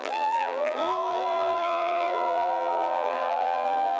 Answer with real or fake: fake